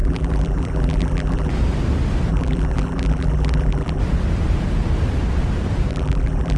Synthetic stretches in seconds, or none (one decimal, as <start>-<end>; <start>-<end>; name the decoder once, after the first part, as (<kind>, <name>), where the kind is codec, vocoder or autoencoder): 0.0-1.5 (vocoder, BigVGAN v2); 2.3-4.0; 5.9-6.6